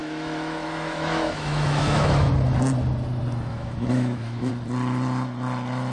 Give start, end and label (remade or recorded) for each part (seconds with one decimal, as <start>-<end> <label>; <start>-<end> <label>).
0.0-2.3 remade; 2.3-3.5 recorded; 3.5-4.5 remade; 4.5-5.9 recorded